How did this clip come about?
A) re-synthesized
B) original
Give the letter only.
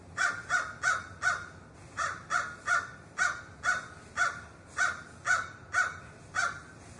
A